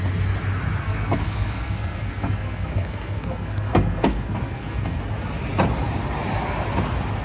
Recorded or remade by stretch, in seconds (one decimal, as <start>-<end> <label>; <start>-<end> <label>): 0.0-0.8 recorded; 0.8-5.0 remade; 5.0-7.2 recorded